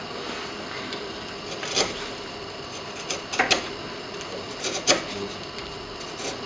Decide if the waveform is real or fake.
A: real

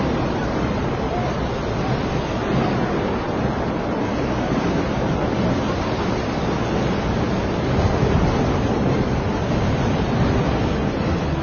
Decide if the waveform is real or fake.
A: real